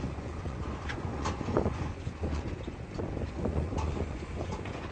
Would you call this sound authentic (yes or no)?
no